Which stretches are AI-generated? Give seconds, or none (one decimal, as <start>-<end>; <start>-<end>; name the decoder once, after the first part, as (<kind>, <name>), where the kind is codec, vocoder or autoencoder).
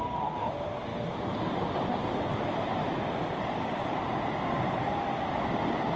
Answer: none